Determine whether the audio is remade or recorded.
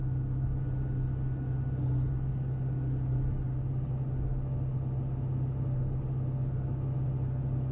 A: recorded